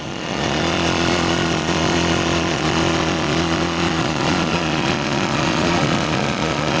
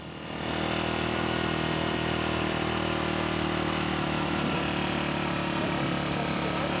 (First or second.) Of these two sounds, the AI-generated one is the first